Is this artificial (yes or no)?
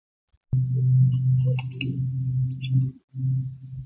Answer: no